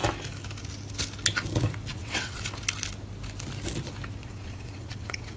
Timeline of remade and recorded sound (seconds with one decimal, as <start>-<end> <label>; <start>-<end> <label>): 0.0-1.9 recorded; 1.9-2.4 remade; 2.4-4.2 recorded; 4.2-5.4 remade